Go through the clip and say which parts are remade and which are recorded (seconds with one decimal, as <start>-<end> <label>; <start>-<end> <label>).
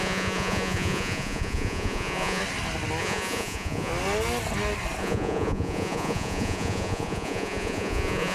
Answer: 0.0-2.4 remade; 2.4-3.0 recorded; 3.0-3.9 remade; 3.9-5.0 recorded; 5.0-8.3 remade